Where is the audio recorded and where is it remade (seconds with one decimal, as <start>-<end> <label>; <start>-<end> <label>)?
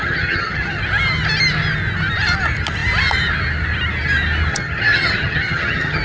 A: 0.0-0.8 remade; 0.8-4.5 recorded; 4.5-6.0 remade